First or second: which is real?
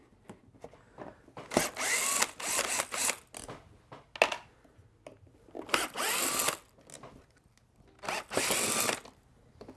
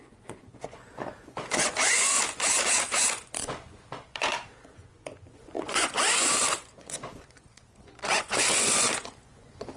first